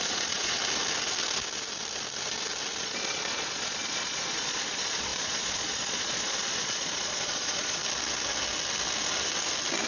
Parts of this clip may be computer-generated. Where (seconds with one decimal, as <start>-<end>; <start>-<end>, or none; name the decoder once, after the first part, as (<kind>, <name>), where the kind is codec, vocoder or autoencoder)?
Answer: 0.0-0.6 (vocoder, Vocos); 2.8-7.8